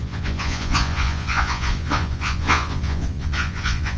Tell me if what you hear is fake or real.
fake